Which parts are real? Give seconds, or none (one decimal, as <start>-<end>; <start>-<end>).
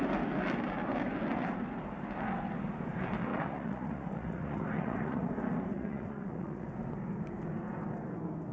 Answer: 0.0-3.3; 5.3-5.7; 6.7-8.5